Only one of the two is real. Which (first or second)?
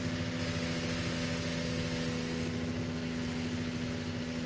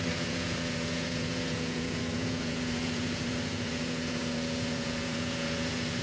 first